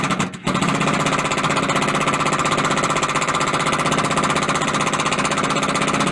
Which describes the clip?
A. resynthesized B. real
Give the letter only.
B